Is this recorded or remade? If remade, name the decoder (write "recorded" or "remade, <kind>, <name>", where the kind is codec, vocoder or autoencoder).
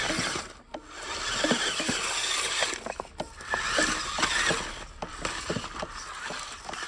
recorded